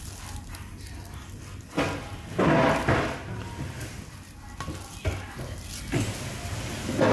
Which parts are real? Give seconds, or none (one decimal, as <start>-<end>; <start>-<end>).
0.0-7.1